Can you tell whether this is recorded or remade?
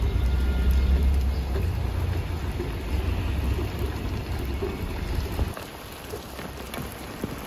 recorded